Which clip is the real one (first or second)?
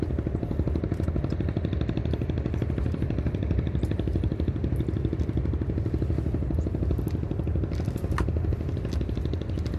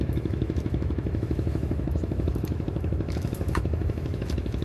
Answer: first